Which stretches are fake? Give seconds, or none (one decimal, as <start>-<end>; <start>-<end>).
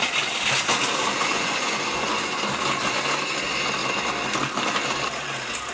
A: 1.3-2.4